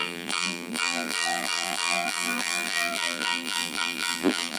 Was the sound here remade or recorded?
remade